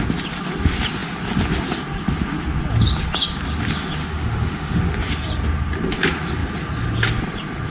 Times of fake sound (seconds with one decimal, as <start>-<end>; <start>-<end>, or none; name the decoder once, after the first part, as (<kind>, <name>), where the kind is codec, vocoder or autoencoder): 4.0-4.8 (autoencoder, DAC-VAE)